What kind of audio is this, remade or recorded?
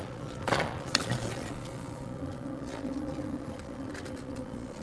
remade